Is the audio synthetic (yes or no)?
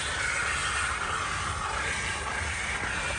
no